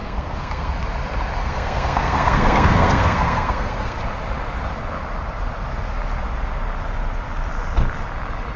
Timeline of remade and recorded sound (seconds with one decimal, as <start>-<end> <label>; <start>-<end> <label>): 0.0-0.7 remade; 0.7-1.4 recorded; 1.4-4.0 remade; 4.0-8.6 recorded